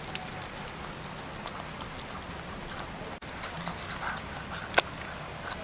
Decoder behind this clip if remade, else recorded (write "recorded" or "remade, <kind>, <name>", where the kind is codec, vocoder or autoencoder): recorded